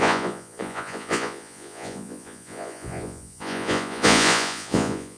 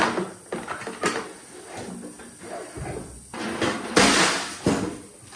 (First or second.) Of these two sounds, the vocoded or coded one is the first